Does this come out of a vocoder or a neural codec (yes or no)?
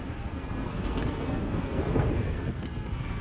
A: yes